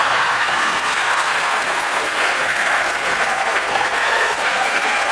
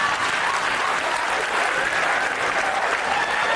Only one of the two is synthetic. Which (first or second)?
first